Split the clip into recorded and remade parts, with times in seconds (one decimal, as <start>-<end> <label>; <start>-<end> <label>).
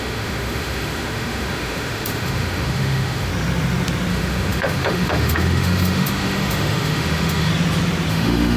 0.0-3.3 remade; 3.3-4.1 recorded; 4.1-7.5 remade; 7.5-8.1 recorded; 8.1-8.6 remade